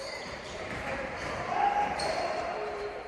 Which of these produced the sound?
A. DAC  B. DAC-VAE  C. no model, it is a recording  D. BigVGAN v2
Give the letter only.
D